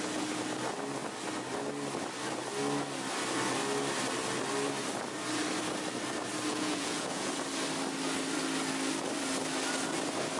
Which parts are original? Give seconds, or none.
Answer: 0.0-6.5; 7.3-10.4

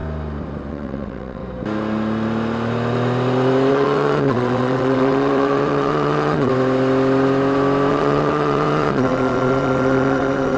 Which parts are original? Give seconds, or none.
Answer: 0.0-0.7; 1.4-3.7; 6.5-7.9

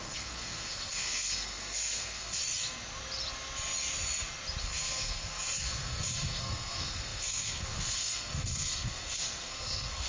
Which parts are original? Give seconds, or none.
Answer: 2.4-4.6

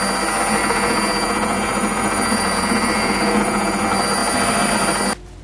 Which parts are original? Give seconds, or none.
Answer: 0.0-0.6; 3.8-5.4

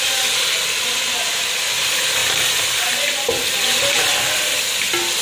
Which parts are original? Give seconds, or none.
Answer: 0.0-5.2

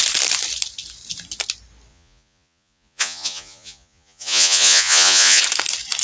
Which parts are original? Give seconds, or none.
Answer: 0.0-1.9; 5.4-6.0

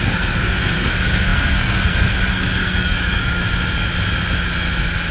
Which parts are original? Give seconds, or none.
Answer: 3.4-5.1

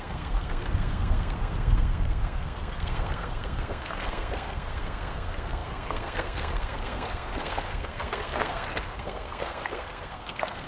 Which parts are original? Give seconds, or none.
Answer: none